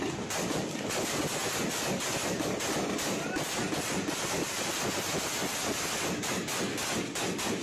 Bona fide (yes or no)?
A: yes